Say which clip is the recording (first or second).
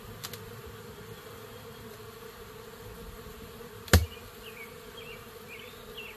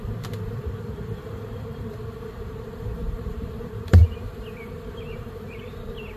first